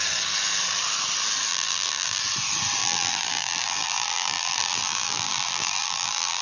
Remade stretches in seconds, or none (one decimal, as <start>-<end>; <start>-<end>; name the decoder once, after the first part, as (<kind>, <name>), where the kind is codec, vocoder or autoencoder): 1.5-2.2 (vocoder, BigVGAN v2); 2.8-6.4